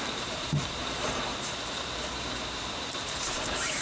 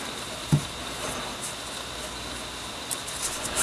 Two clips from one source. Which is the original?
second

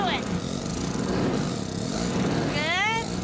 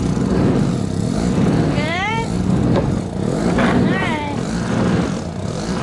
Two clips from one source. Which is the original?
first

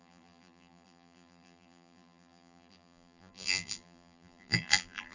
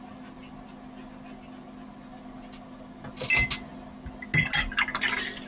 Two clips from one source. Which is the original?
second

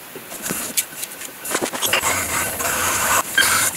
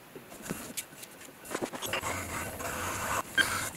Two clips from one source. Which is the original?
second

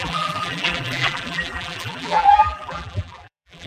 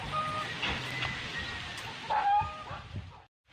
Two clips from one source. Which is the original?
second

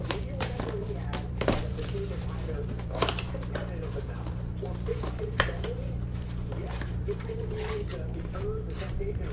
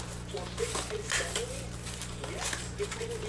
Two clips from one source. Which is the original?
second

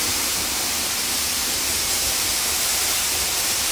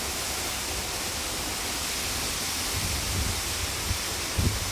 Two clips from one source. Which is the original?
second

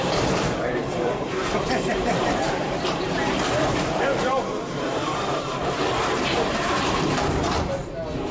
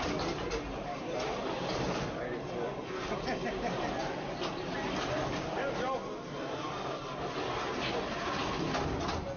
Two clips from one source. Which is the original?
second